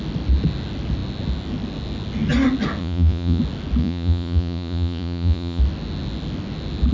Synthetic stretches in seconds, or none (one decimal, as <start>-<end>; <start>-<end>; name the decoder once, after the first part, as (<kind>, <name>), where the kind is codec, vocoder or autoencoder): 2.8-3.4 (vocoder, Vocos); 3.8-5.6